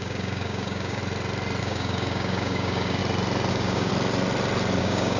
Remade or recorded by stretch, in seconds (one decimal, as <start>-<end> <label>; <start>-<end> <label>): 0.0-1.0 remade; 1.0-1.6 recorded; 1.6-3.0 remade; 3.0-3.5 recorded; 3.5-3.9 remade; 3.9-4.8 recorded; 4.8-5.2 remade